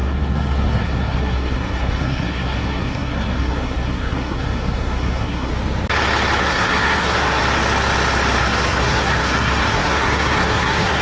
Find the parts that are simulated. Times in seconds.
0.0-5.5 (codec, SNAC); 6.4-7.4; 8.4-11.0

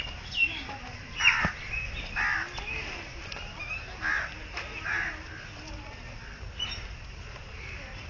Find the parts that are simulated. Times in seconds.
none

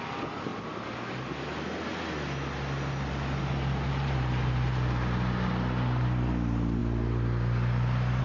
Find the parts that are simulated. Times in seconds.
none

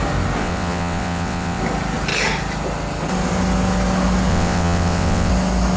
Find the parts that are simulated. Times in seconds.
0.4-1.6 (vocoder, WaveNeXt); 4.3-5.3

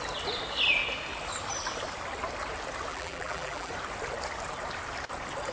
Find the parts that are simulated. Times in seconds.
2.9-3.7 (vocoder, BigVGAN v2)

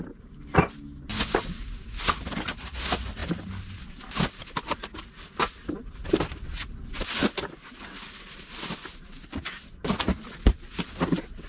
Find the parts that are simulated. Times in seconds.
none

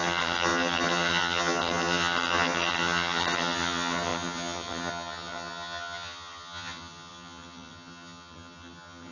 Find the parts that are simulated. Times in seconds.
0.0-9.1 (vocoder, HiFi-GAN)

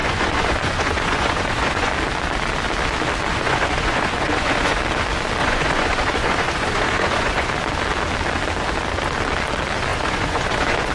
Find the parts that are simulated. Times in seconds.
0.0-1.9 (vocoder, Vocos); 3.3-4.8; 5.4-7.5; 9.9-10.9